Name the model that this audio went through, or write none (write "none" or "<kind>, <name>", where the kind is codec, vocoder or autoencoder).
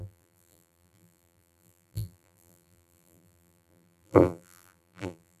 vocoder, BigVGAN v2